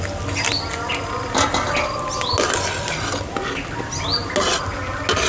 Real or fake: real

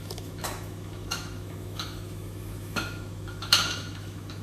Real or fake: fake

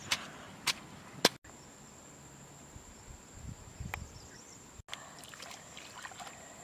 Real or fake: real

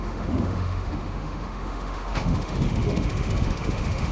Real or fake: fake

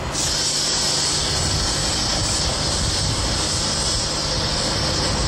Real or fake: real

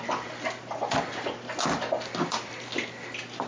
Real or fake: real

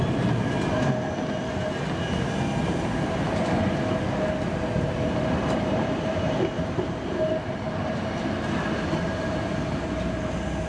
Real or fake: real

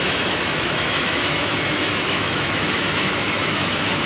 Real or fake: fake